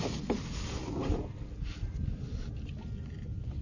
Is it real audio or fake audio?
real